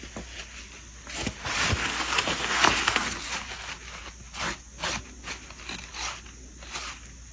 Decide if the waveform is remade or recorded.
recorded